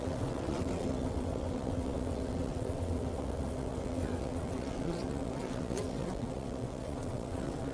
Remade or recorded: remade